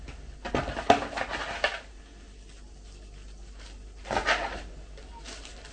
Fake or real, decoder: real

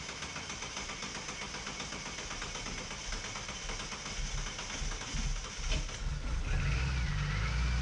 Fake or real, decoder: real